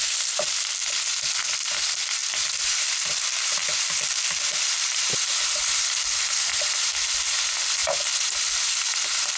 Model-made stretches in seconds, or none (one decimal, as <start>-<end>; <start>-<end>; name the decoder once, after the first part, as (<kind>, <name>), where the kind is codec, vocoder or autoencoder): 2.2-6.9 (vocoder, BigVGAN v2); 7.8-9.0